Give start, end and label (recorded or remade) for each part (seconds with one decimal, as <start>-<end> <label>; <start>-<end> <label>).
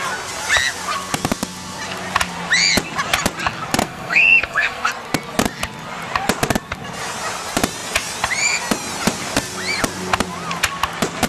0.0-3.8 recorded; 3.8-4.9 remade; 4.9-11.3 recorded